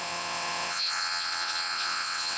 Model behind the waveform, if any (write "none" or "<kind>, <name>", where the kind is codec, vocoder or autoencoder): vocoder, WaveNeXt